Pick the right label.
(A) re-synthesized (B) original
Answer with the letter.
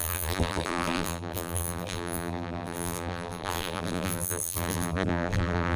A